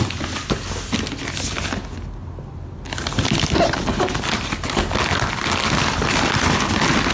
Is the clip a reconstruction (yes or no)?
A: no